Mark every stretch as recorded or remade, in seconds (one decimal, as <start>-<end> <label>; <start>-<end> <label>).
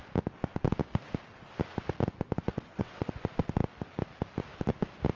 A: 0.0-2.5 recorded; 2.5-3.1 remade; 3.1-5.2 recorded